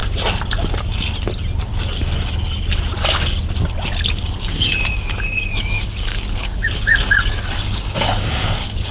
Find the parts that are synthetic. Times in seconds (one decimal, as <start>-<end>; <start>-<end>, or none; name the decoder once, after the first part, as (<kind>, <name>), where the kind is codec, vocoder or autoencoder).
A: 4.4-8.9 (codec, DAC)